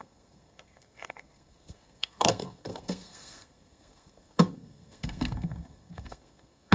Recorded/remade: remade